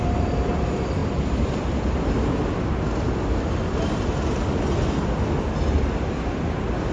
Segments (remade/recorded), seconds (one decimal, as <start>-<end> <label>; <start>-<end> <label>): 0.0-6.9 recorded

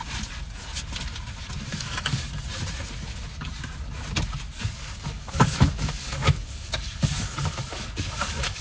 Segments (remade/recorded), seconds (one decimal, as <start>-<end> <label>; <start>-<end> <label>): 0.0-1.7 recorded; 1.7-2.3 remade; 2.3-4.6 recorded; 4.6-8.6 remade

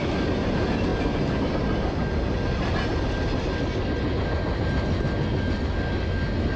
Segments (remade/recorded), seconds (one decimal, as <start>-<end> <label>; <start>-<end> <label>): 0.0-6.6 recorded

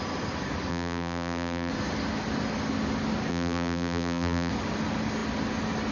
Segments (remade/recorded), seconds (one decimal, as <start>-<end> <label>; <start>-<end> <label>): 0.0-0.7 recorded; 0.7-1.7 remade; 1.7-3.3 recorded; 3.3-4.5 remade; 4.5-5.9 recorded

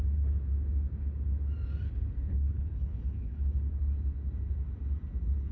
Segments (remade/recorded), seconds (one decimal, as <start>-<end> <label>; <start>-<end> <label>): 0.0-2.3 recorded; 2.3-3.6 remade; 3.6-5.5 recorded

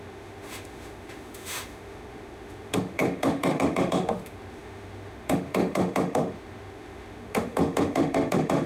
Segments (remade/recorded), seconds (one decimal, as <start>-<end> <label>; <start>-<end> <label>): 0.0-8.7 remade